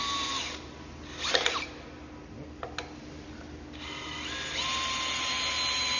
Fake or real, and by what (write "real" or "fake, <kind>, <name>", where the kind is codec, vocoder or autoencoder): real